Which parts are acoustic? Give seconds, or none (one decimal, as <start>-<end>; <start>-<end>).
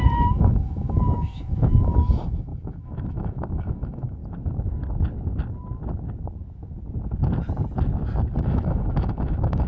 4.2-8.4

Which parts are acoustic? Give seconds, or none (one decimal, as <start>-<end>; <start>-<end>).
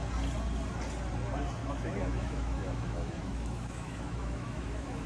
0.0-1.6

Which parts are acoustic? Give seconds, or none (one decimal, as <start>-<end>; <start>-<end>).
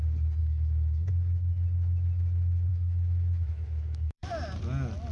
0.0-0.4; 1.1-2.7; 4.3-5.1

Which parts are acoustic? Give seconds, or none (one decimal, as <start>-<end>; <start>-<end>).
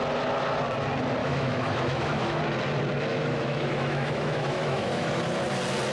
0.0-1.2; 2.4-3.1; 5.1-5.9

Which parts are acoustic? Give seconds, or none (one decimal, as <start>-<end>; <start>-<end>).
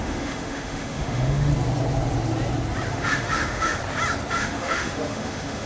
1.5-2.9; 3.8-4.3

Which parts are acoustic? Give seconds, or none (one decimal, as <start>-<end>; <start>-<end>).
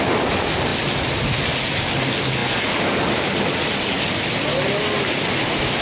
0.0-5.8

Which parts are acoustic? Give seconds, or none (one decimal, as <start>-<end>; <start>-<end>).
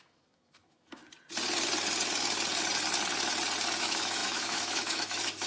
1.0-3.8